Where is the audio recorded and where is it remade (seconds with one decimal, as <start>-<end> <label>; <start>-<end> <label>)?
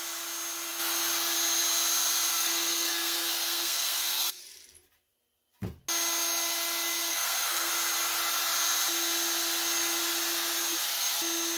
0.0-2.3 recorded; 2.3-4.4 remade; 4.4-7.1 recorded; 7.1-7.7 remade; 7.7-11.6 recorded